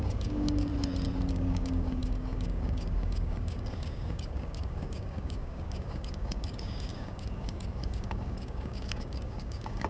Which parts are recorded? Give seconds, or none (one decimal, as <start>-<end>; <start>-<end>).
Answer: 0.7-1.3